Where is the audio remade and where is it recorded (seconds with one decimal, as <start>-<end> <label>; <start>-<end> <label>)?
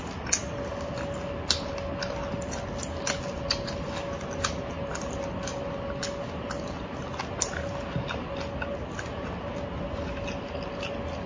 0.0-11.3 recorded